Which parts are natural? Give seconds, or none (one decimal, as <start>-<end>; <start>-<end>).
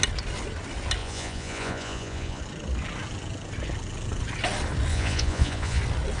0.0-1.0; 2.4-4.9; 5.8-6.2